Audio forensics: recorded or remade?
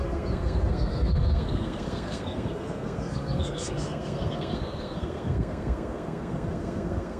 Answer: remade